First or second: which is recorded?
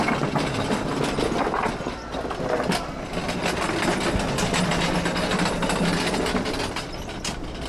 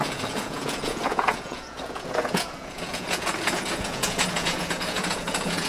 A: first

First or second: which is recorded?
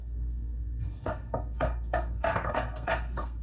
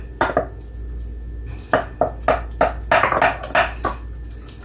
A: second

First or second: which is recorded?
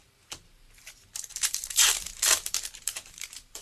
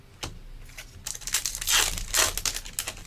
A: second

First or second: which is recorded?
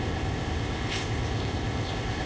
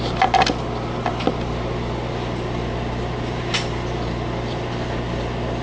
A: second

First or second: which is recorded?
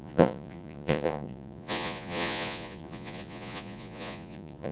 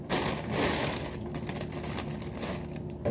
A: second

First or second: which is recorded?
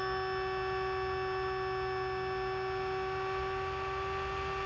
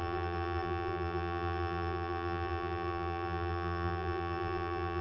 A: first